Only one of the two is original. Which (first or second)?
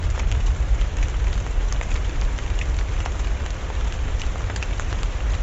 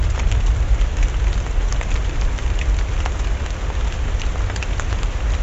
second